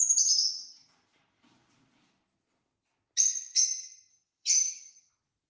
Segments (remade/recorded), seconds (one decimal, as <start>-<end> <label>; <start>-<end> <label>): 0.0-4.1 recorded; 4.1-5.1 remade; 5.1-5.5 recorded